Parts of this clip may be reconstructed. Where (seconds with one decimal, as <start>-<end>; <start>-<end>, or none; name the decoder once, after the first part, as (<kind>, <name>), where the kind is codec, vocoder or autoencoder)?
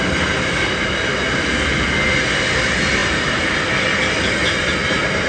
none